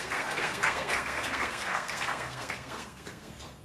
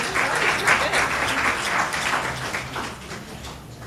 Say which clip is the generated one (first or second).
first